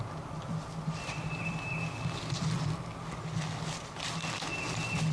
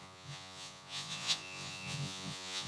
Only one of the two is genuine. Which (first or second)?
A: first